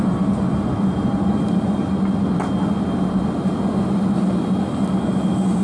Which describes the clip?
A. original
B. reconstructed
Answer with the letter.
A